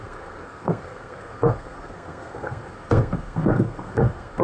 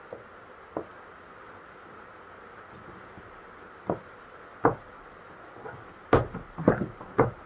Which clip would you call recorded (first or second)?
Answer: second